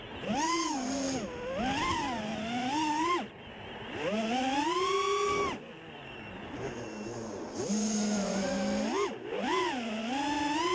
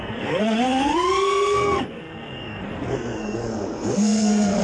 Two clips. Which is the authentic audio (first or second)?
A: first